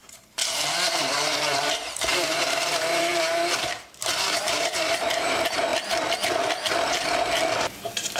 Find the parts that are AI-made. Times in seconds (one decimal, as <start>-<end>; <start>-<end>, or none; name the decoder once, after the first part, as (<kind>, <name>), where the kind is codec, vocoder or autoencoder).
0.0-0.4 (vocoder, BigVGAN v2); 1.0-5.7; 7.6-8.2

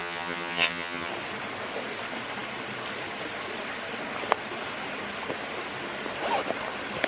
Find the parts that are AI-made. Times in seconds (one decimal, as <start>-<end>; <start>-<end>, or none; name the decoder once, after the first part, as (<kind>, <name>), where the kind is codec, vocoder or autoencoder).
0.0-1.1 (vocoder, HiFi-GAN)

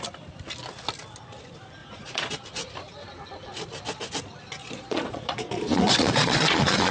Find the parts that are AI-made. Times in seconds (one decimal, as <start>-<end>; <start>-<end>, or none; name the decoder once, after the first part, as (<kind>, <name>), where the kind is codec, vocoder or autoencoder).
1.8-2.3 (vocoder, Vocos); 4.6-6.9